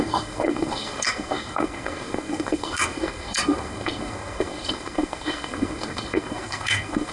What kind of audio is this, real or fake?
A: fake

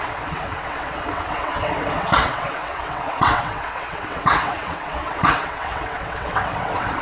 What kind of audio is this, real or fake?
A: fake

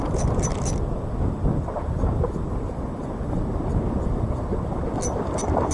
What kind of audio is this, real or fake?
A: real